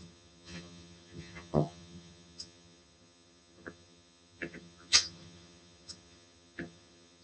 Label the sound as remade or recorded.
remade